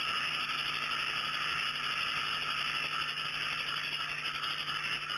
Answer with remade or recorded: recorded